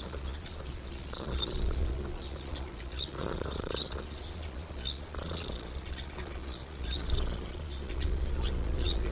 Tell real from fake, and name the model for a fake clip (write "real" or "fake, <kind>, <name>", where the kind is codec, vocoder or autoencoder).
fake, vocoder, Vocos